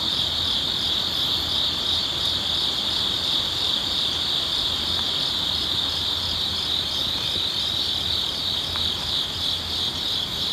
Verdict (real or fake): real